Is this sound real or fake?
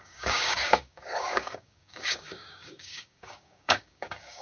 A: fake